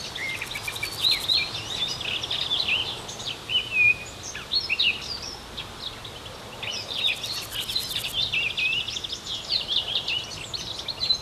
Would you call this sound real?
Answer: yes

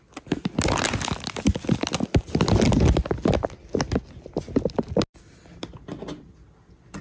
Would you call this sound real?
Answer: yes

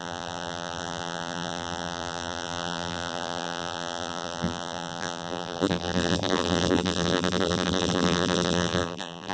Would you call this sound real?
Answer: no